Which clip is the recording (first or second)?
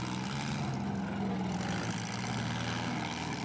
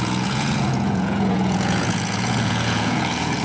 first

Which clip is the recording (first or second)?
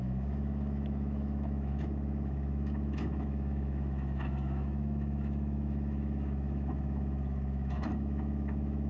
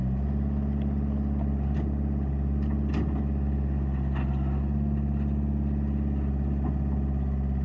second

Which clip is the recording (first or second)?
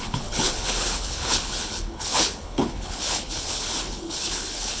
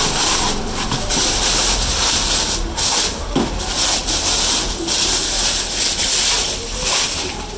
second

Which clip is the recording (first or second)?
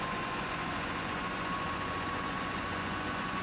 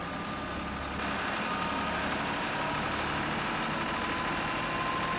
second